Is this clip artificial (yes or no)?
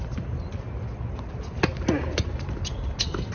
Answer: no